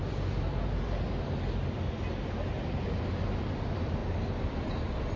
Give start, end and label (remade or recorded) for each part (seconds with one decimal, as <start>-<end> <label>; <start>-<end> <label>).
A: 0.0-4.0 recorded; 4.0-5.2 remade